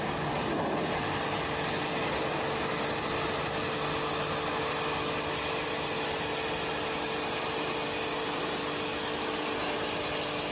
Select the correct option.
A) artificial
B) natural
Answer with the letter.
B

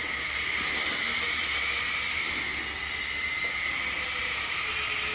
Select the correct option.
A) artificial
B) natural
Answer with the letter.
B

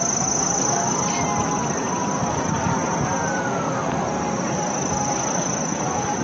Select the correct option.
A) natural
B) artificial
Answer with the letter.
A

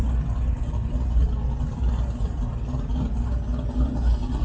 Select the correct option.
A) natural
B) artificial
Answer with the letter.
A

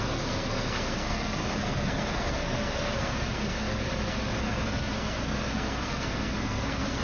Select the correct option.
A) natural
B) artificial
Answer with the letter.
B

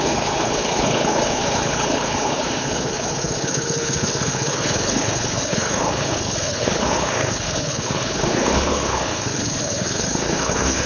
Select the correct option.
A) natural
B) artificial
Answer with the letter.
B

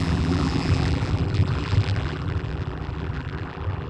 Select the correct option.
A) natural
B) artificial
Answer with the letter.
B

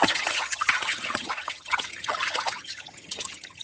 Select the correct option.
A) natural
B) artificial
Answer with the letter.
B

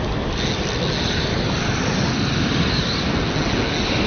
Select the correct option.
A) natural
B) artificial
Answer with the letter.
A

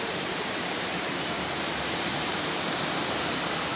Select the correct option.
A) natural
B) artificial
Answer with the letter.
B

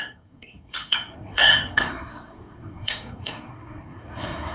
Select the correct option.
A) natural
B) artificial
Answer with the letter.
B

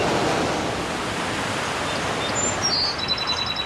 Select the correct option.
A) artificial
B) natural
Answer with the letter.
B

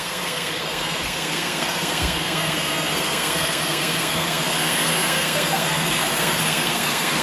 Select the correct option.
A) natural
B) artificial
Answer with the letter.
B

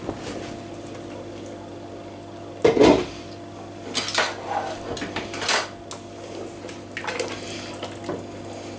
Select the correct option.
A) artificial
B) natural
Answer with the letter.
B